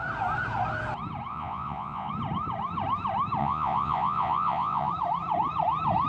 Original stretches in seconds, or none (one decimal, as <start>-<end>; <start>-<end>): 0.0-1.3; 2.1-3.4; 4.9-6.1

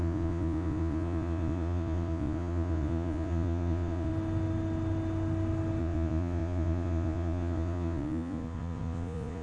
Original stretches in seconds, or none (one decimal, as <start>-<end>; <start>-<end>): 4.1-5.8

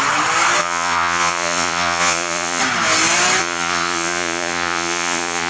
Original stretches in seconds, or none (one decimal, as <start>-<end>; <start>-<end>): 0.0-0.6; 2.6-3.4

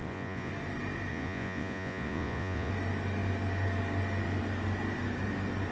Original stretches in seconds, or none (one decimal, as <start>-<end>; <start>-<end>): 0.5-1.1; 2.7-5.7

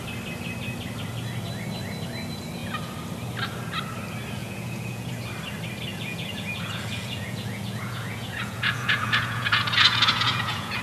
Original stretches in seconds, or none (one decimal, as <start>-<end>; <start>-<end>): 0.0-4.4; 5.1-5.9

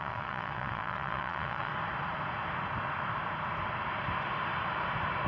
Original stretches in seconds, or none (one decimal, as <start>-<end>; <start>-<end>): 1.7-5.3